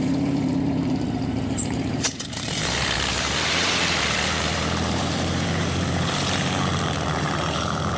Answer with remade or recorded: remade